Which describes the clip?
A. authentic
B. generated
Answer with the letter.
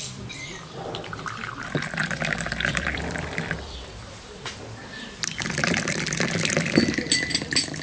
B